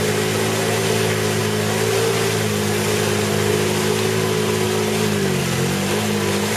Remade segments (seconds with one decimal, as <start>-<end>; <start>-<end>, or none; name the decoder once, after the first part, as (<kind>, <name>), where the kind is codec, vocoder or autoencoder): none